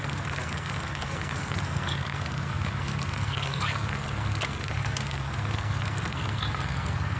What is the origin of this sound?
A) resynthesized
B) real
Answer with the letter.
A